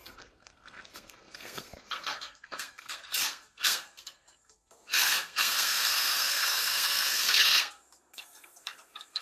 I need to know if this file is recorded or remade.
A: remade